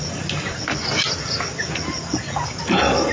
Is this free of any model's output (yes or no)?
yes